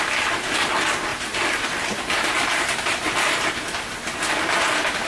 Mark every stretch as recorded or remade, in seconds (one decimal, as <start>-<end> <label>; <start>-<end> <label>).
0.0-1.1 recorded; 1.1-3.8 remade; 3.8-5.1 recorded